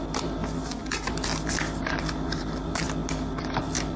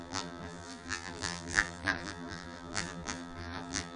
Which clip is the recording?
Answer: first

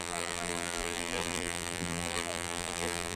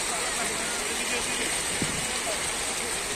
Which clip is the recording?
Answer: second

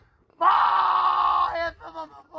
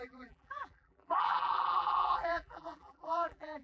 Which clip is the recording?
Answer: first